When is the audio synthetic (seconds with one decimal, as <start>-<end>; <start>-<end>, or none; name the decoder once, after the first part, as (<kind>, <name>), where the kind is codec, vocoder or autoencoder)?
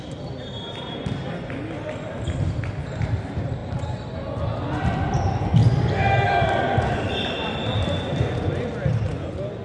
none